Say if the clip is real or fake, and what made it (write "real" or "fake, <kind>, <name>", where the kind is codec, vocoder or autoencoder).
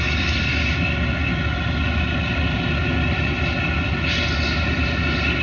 real